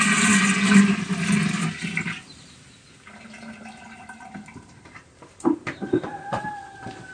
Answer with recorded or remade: recorded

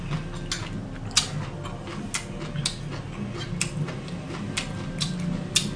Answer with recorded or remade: recorded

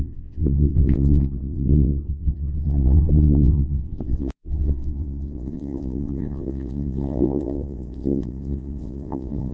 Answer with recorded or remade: remade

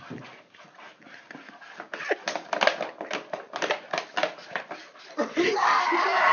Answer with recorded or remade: recorded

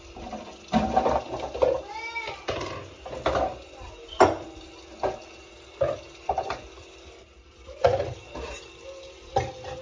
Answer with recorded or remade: recorded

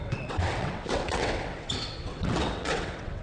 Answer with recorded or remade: remade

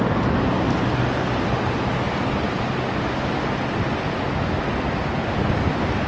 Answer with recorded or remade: recorded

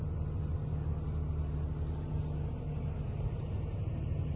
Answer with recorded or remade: recorded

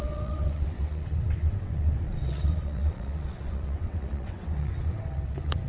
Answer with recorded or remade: remade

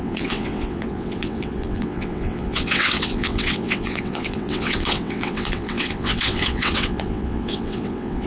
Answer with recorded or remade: remade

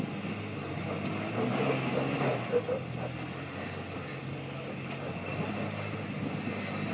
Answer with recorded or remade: recorded